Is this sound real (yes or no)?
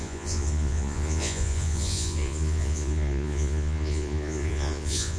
no